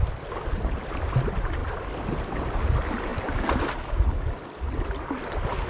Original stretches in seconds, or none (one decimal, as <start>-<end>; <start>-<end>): 0.0-5.7